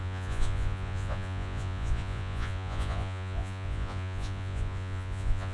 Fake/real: fake